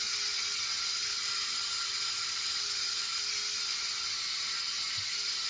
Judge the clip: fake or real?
real